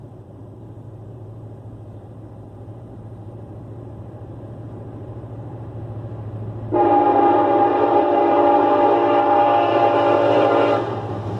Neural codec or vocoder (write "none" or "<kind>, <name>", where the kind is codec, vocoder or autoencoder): vocoder, BigVGAN v2